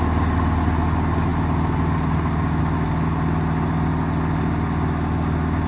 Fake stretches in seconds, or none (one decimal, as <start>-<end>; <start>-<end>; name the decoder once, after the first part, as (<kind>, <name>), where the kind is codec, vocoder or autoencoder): none

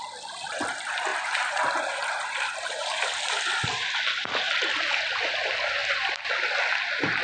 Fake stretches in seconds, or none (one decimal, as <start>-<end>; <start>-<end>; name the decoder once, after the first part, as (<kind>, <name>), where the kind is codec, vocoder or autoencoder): 1.1-3.3 (vocoder, BigVGAN v2)

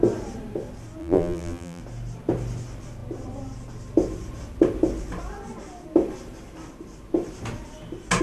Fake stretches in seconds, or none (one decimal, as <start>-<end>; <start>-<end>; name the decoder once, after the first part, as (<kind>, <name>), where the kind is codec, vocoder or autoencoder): 1.0-1.8 (vocoder, BigVGAN v2)

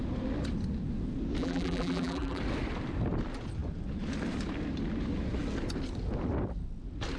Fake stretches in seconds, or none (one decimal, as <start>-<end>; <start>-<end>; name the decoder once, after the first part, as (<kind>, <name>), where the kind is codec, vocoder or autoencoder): 1.4-2.4 (vocoder, BigVGAN v2)

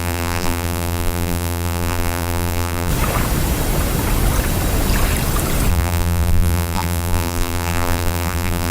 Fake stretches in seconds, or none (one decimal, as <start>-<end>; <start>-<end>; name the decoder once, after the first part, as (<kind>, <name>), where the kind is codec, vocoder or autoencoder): 0.0-2.9 (vocoder, BigVGAN v2); 5.7-8.7

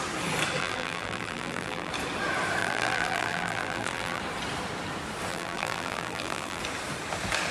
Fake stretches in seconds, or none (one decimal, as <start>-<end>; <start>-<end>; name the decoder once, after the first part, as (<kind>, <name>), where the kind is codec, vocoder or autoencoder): 0.6-1.9 (vocoder, BigVGAN v2); 2.6-4.2; 5.3-6.6

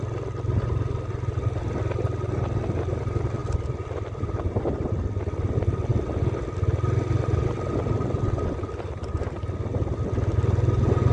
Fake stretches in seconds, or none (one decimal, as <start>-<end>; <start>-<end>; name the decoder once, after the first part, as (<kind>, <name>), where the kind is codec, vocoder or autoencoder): 3.4-5.2 (vocoder, BigVGAN v2)

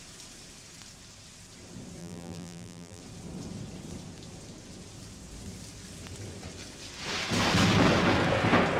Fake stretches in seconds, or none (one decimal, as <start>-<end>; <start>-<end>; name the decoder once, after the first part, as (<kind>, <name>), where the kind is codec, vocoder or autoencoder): 2.0-3.0 (vocoder, BigVGAN v2)